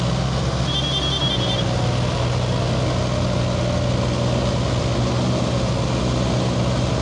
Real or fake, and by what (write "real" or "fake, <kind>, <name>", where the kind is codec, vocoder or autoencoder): real